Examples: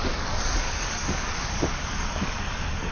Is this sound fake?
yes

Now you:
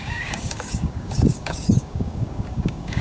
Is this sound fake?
yes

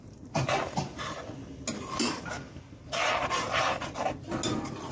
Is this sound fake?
no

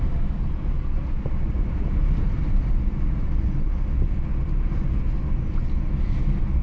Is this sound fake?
no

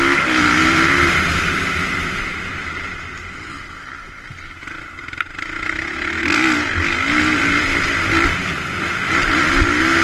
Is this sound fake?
no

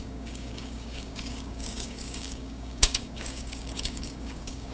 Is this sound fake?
yes